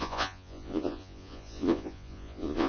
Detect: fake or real fake